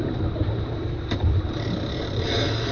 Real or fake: fake